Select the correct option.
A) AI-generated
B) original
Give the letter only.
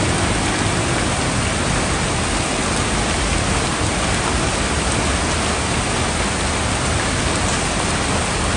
B